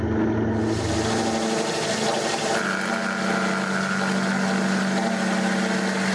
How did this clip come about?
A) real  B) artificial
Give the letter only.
A